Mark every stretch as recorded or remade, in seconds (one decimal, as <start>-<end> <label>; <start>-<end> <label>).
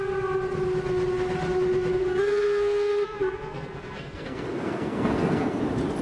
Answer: 0.0-2.0 recorded; 2.0-5.6 remade; 5.6-6.0 recorded